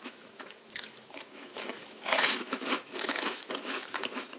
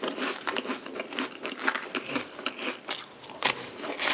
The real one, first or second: second